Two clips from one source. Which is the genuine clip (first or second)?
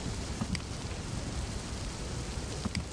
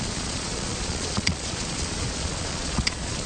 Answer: first